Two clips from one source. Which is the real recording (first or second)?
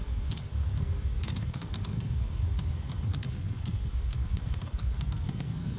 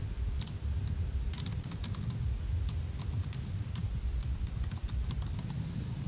second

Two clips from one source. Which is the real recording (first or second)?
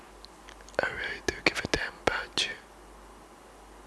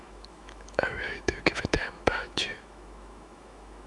first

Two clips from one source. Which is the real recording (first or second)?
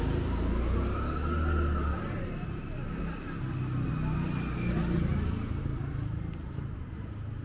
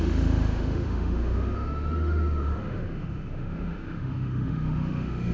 first